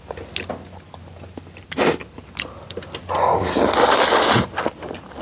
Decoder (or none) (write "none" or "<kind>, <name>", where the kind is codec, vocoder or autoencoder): none